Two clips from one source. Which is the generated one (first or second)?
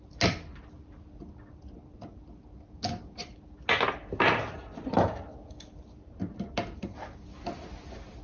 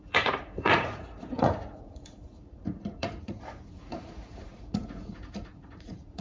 second